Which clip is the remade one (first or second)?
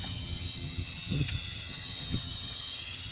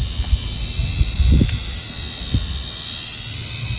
first